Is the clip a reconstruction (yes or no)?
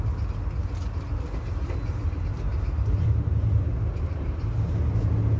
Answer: no